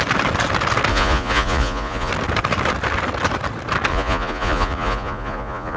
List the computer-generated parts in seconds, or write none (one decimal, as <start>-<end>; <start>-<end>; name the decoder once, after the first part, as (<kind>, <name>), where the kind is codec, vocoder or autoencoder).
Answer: 0.9-2.1 (vocoder, Vocos); 3.9-5.8